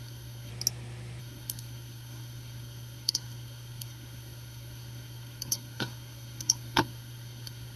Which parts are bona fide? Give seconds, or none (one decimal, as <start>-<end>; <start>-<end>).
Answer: 0.5-1.2